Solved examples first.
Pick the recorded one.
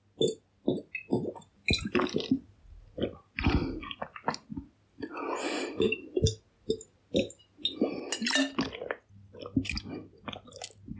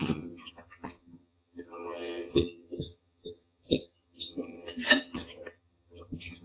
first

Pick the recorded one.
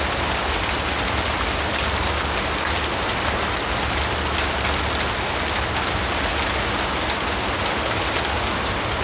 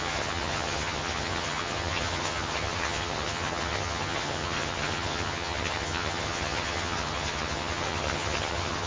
first